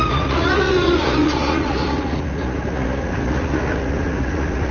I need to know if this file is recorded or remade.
remade